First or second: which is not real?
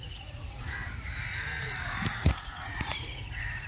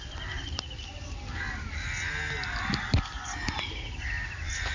first